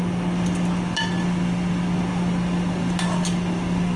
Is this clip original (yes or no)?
yes